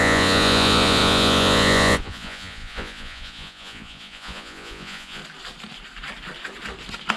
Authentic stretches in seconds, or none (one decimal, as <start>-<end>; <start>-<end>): 5.2-7.2